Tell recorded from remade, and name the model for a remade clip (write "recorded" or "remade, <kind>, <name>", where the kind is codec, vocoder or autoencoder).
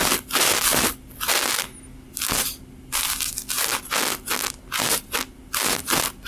recorded